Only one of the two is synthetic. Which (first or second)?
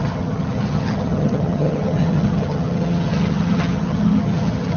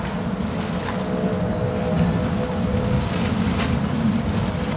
first